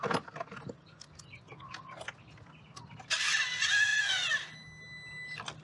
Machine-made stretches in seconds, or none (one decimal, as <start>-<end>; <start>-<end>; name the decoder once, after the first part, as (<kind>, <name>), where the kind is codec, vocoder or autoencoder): none